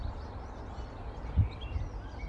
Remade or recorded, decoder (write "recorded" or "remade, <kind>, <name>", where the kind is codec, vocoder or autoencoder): recorded